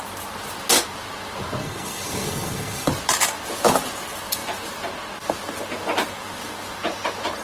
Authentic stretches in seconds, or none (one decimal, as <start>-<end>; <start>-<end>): 0.0-1.6; 2.9-7.4